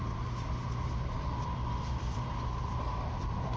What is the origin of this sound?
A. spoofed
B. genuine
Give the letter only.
A